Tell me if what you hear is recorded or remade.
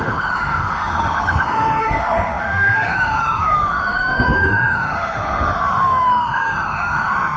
remade